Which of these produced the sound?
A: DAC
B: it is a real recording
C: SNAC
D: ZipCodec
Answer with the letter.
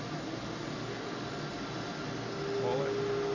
B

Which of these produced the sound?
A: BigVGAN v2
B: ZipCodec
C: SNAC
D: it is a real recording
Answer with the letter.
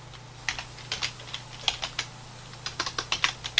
D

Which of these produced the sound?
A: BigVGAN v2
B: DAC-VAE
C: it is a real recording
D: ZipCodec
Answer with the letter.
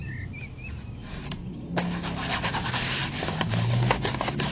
C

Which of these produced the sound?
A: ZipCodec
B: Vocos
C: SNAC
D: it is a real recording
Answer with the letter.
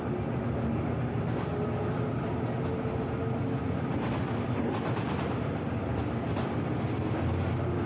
D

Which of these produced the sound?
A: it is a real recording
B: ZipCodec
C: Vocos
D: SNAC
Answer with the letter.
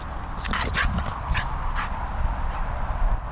A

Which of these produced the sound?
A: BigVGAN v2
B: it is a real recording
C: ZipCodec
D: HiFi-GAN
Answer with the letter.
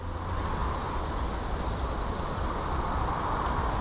B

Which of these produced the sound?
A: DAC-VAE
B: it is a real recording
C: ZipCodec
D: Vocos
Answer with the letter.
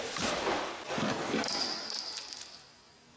B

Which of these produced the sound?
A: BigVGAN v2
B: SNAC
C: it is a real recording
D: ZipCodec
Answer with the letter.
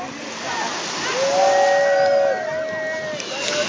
C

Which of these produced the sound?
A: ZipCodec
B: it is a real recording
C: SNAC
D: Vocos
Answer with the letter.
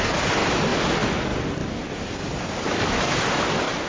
B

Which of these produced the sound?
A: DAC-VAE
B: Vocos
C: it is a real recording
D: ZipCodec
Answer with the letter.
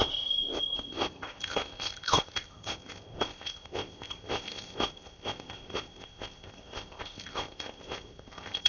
D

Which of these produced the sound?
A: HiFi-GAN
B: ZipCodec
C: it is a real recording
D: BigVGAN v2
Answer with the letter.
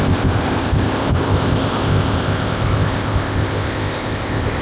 B